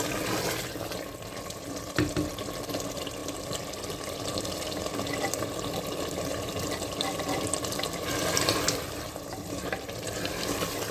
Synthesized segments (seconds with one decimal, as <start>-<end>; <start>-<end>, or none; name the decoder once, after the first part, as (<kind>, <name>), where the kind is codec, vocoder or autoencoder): none